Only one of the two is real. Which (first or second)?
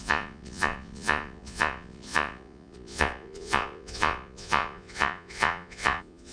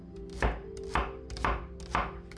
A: second